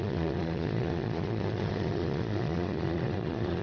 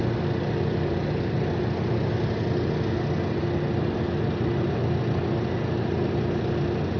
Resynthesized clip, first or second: first